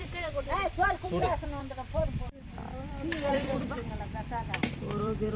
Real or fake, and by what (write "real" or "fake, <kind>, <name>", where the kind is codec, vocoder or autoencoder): fake, vocoder, BigVGAN v2